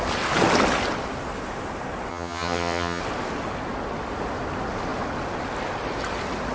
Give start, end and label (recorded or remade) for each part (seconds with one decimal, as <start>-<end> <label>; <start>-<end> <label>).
0.0-2.1 recorded; 2.1-3.0 remade; 3.0-6.5 recorded